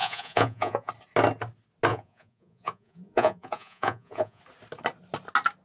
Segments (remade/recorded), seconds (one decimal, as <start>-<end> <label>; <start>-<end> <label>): 0.0-0.9 remade; 0.9-1.9 recorded; 1.9-4.4 remade; 4.4-5.6 recorded